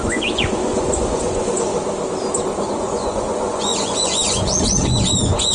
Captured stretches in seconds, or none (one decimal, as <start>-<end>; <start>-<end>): 1.7-2.7